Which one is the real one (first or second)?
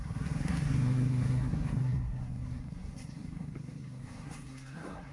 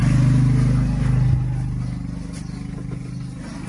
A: second